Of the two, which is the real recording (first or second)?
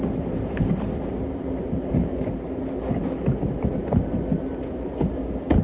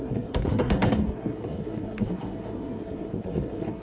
first